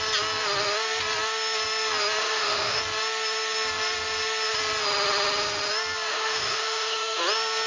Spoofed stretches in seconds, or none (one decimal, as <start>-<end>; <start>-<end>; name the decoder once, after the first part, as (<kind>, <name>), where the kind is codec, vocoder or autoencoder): 2.2-2.8 (autoencoder, DAC-VAE); 6.1-7.2

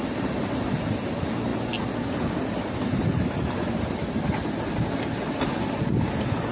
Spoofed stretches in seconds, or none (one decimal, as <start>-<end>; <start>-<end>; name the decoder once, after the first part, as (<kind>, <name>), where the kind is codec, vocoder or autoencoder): none

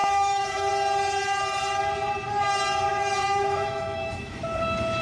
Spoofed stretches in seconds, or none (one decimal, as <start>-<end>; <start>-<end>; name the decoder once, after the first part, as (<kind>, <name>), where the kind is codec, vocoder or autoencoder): 0.0-0.7 (autoencoder, DAC-VAE); 2.9-4.4